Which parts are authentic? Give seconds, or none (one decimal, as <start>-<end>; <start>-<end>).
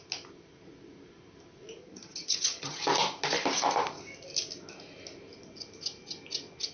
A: 0.0-1.8; 2.8-6.7